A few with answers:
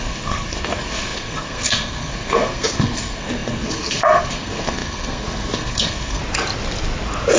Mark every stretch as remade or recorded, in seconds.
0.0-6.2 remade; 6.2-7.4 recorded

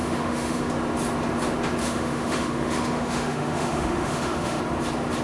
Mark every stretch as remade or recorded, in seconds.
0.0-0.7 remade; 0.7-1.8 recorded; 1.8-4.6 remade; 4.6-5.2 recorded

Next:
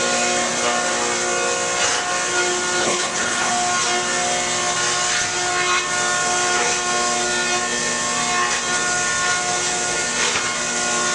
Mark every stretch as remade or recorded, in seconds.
0.0-2.8 recorded; 2.8-3.5 remade; 3.5-11.1 recorded